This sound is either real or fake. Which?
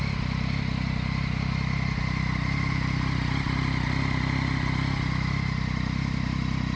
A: real